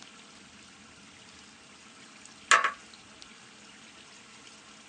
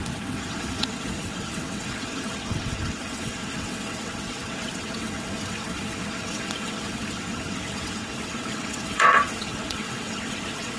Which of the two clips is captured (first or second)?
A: first